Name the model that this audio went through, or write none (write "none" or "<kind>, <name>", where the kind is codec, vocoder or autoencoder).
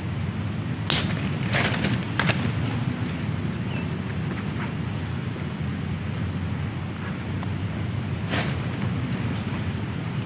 none